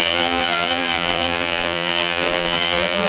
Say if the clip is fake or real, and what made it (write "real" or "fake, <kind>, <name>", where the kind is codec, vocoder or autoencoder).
fake, vocoder, BigVGAN v2